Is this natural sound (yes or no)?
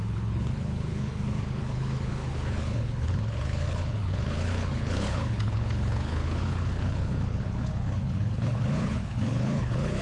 no